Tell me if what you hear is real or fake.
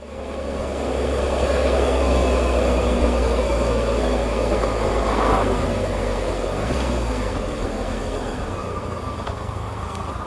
fake